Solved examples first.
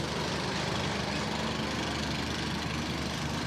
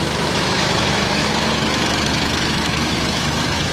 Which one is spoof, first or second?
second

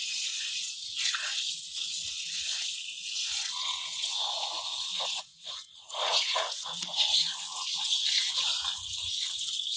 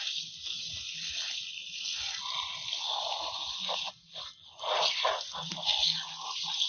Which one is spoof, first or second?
first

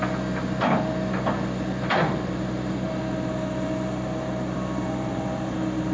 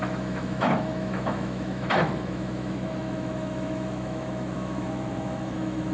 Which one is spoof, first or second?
second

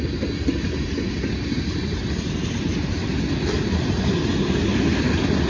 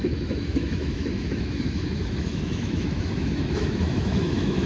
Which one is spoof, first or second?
second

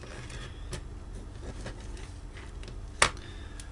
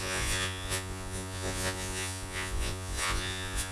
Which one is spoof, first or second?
second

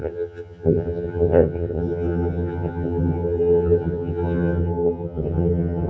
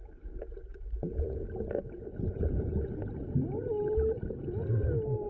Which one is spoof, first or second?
first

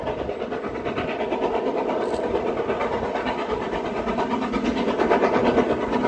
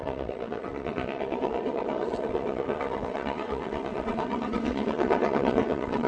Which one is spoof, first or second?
second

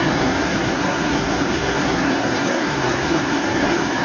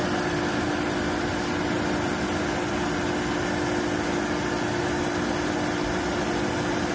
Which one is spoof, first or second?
first